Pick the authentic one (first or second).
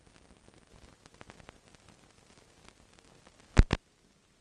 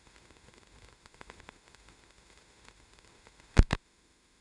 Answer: first